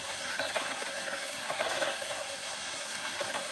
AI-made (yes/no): yes